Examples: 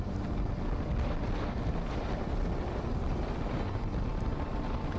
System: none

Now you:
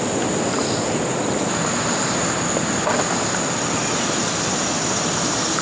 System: none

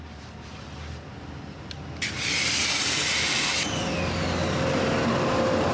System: none